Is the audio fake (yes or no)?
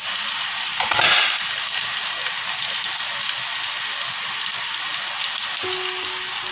no